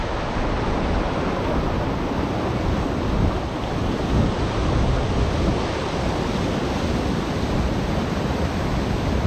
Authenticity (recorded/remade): recorded